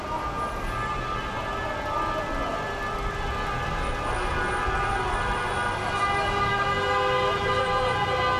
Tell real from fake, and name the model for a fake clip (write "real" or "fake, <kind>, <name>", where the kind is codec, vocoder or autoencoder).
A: real